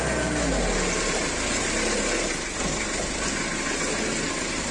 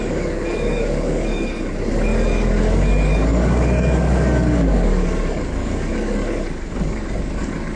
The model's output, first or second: second